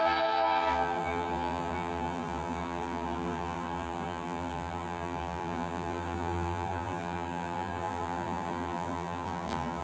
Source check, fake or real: fake